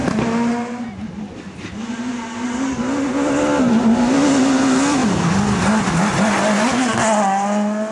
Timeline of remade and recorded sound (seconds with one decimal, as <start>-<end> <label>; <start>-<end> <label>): 0.0-7.9 recorded